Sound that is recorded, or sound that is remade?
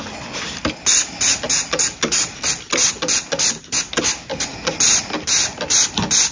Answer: recorded